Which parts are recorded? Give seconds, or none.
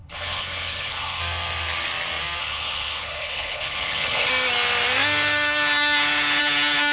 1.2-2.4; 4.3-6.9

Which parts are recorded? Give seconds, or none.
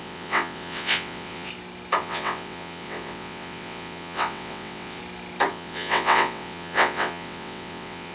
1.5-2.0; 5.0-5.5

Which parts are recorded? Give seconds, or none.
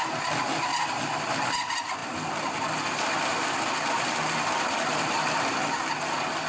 0.0-0.7; 1.5-2.0; 5.9-6.5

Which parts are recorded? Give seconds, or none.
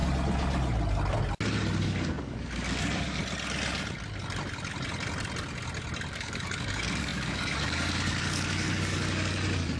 0.0-1.8; 3.2-6.1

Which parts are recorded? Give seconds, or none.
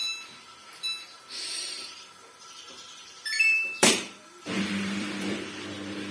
0.0-1.5